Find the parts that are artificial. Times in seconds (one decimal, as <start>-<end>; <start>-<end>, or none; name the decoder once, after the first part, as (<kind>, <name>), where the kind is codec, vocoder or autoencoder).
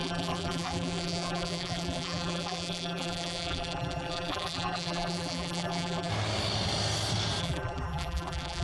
0.0-6.1 (vocoder, BigVGAN v2); 7.4-8.6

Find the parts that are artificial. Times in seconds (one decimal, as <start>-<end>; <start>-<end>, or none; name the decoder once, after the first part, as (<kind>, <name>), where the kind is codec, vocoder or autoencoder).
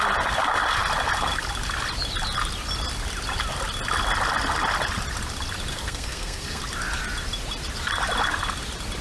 5.7-6.6 (codec, SNAC)